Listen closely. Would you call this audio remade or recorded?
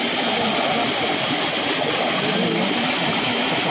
recorded